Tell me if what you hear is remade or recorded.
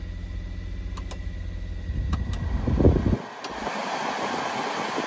recorded